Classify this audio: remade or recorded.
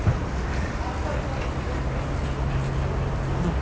recorded